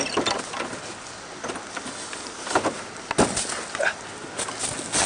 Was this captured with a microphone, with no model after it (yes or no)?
yes